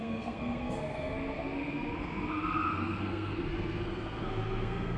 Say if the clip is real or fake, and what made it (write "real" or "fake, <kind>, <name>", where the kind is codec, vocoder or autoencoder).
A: fake, codec, SNAC